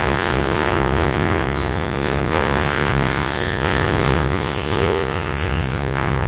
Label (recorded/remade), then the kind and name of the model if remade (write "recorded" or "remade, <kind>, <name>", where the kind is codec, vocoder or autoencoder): remade, vocoder, Vocos